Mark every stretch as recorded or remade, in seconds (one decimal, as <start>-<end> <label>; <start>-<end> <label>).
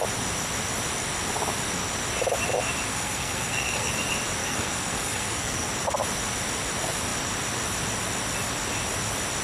0.0-2.9 recorded; 2.9-3.9 remade; 3.9-4.4 recorded; 4.4-5.7 remade; 5.7-9.4 recorded